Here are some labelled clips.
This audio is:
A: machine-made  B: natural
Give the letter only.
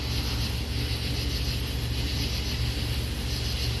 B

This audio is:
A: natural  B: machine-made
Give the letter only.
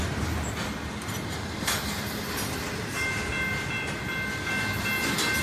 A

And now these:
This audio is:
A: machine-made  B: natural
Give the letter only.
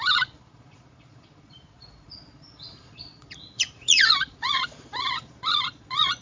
A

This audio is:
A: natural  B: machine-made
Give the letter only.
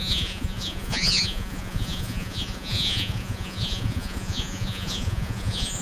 B